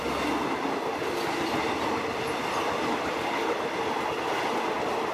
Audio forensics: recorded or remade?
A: recorded